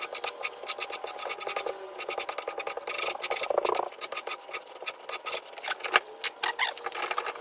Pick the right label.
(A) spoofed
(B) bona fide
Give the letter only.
B